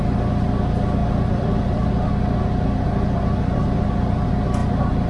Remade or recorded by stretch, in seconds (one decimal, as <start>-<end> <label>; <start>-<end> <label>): 0.0-1.0 recorded; 1.0-1.9 remade; 1.9-4.6 recorded; 4.6-5.1 remade